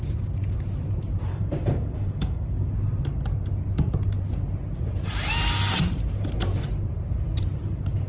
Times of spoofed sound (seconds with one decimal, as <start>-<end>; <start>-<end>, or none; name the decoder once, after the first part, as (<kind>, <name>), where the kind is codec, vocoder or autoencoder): 1.3-2.7 (codec, DAC)